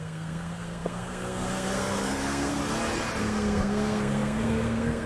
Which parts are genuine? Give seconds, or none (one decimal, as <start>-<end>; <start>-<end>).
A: 2.6-3.2